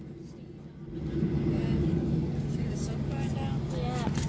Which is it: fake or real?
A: real